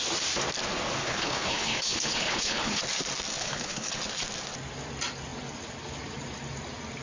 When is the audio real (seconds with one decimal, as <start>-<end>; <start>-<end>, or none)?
0.0-1.0; 2.8-3.4; 3.9-7.0